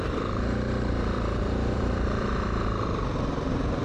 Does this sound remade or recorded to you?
remade